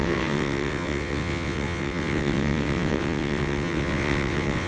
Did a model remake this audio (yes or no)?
yes